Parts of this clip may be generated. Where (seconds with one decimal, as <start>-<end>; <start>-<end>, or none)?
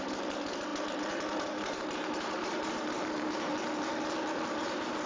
0.0-3.5; 4.5-5.1